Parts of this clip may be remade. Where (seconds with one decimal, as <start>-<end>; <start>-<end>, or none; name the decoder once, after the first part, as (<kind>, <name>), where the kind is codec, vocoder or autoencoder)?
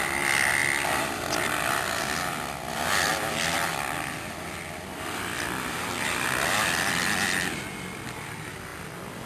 3.1-7.6 (vocoder, BigVGAN v2)